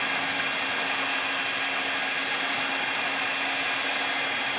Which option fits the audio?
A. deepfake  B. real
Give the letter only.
B